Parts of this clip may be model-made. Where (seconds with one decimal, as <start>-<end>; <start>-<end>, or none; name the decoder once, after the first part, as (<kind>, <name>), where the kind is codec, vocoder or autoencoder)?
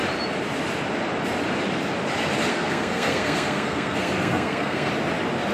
2.5-4.9 (codec, SNAC)